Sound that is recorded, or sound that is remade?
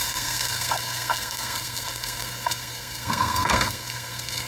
remade